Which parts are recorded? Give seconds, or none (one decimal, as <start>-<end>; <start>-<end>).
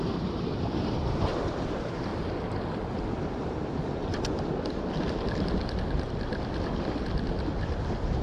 2.1-3.2; 4.1-8.2